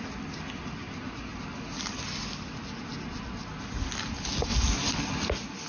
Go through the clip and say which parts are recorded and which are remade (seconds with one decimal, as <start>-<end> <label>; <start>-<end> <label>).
0.0-5.7 recorded